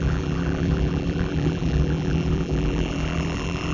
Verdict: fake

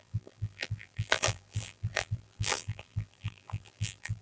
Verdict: fake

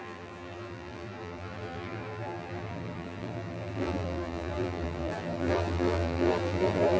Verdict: fake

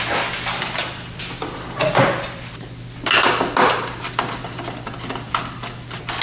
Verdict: real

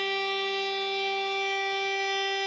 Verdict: real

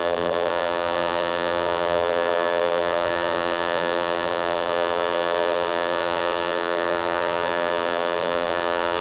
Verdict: fake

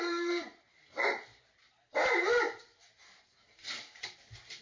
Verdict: fake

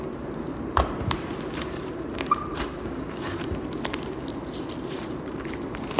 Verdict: fake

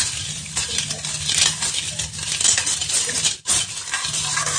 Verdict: real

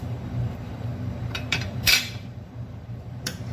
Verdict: fake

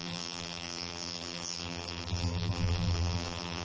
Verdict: fake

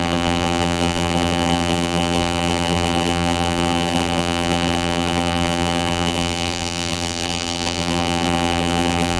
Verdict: fake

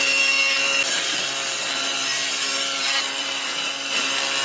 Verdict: fake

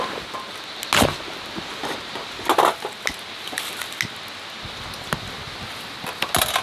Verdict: real